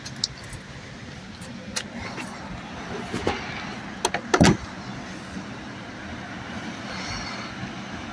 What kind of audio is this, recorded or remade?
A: recorded